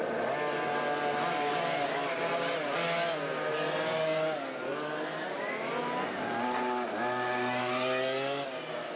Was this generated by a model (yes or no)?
no